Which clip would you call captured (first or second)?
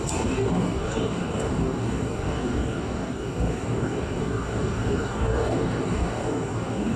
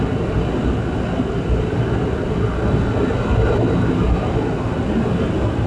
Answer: second